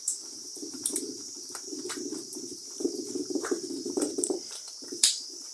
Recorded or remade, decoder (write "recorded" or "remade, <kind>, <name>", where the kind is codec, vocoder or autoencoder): remade, vocoder, BigVGAN v2